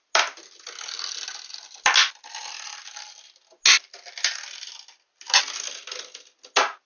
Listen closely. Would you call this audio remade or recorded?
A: recorded